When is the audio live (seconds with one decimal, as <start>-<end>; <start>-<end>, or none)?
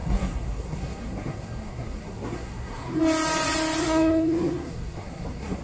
3.0-3.8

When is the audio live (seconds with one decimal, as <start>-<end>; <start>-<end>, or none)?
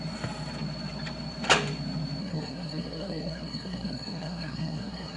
0.0-2.2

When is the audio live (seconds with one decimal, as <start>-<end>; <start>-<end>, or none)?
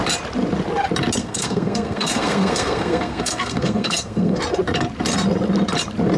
0.0-1.2; 4.4-6.2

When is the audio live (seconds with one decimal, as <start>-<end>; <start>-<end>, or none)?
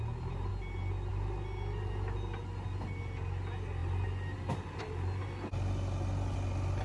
0.0-6.8